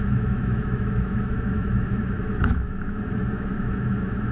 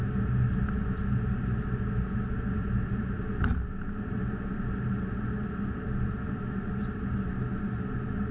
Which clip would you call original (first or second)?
second